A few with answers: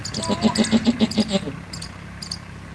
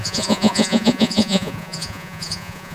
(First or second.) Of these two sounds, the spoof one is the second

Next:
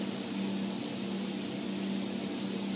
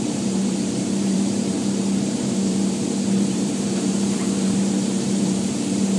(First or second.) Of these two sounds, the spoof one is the second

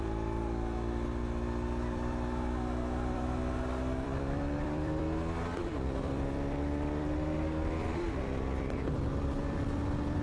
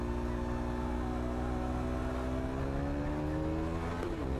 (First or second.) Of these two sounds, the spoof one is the first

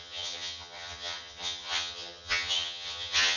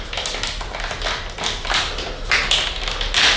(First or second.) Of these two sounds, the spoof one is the first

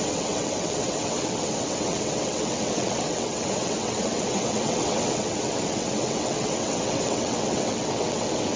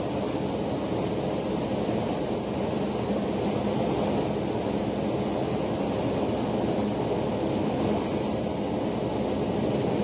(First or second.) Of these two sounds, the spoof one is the first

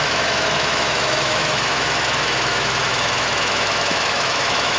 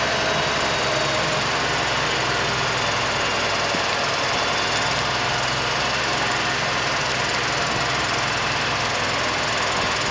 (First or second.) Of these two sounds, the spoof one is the first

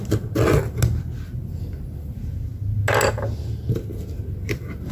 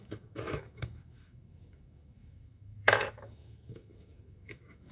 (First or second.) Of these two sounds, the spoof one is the second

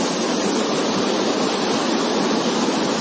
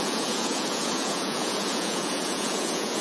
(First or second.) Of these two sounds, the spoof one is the second